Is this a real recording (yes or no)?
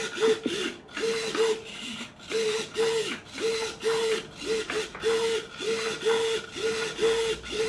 yes